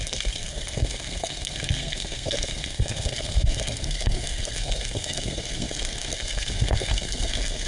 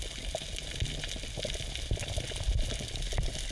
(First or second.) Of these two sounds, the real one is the second